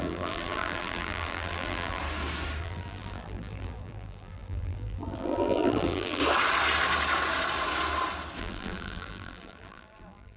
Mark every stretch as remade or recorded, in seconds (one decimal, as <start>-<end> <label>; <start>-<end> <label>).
0.0-2.0 remade; 2.0-2.6 recorded; 2.6-6.2 remade; 6.2-8.4 recorded; 8.4-10.4 remade